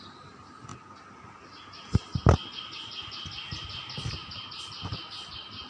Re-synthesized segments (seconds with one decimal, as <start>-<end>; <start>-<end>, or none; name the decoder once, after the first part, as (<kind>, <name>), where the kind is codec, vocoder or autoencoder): none